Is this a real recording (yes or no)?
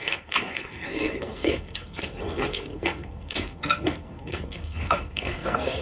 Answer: no